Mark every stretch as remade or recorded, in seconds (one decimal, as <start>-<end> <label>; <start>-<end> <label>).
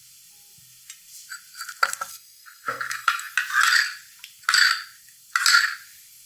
0.0-2.1 recorded; 2.1-3.3 remade; 3.3-6.3 recorded